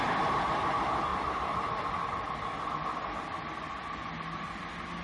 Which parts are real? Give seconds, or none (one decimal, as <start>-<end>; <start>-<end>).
0.0-5.0